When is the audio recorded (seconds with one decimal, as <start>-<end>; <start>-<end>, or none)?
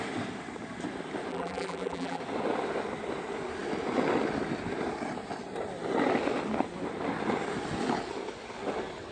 0.0-1.3; 2.2-9.1